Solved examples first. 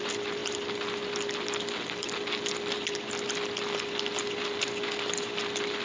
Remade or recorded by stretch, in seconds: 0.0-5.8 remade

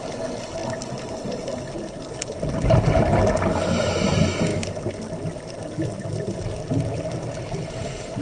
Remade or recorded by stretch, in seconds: 0.0-8.2 recorded

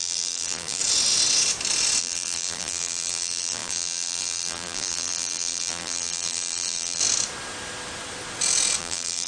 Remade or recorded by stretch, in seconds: 0.0-0.8 remade; 0.8-2.0 recorded; 2.0-7.0 remade; 7.0-8.8 recorded; 8.8-9.3 remade

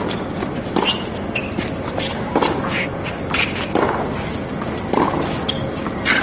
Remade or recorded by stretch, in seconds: 0.0-6.2 recorded